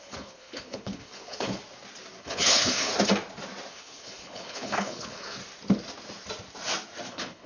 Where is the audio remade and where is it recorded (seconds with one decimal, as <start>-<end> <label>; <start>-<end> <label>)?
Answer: 0.0-1.6 remade; 1.6-2.2 recorded; 2.2-2.9 remade; 2.9-3.7 recorded; 3.7-5.4 remade; 5.4-7.1 recorded; 7.1-7.5 remade